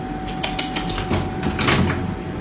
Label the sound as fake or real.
real